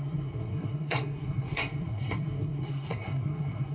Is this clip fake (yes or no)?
yes